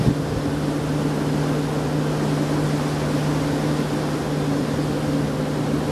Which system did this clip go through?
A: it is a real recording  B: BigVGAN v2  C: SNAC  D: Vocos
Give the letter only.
A